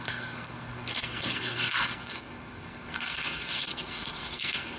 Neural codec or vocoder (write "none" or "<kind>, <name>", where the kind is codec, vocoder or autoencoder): codec, SNAC